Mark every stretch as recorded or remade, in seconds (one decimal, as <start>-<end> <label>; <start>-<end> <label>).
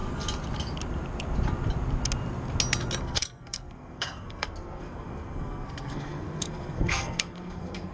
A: 0.0-3.0 recorded; 3.0-7.9 remade